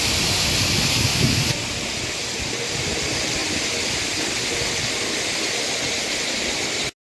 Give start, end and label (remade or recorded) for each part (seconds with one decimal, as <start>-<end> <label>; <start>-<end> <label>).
0.0-1.1 recorded; 1.1-2.4 remade; 2.4-7.2 recorded